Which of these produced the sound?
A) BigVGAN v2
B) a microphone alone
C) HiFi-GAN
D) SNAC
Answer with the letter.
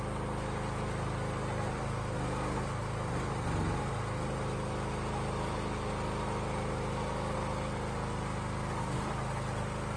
B